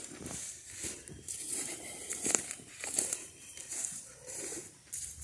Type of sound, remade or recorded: remade